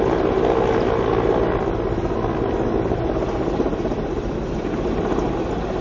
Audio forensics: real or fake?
real